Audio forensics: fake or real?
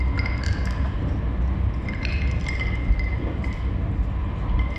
real